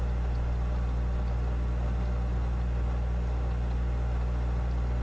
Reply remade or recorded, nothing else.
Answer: recorded